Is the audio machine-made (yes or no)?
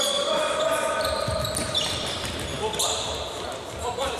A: no